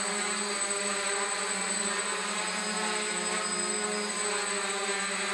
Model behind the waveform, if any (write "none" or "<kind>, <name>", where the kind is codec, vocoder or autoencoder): none